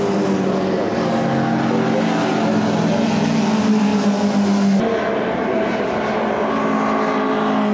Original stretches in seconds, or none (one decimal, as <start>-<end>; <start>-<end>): 0.0-7.7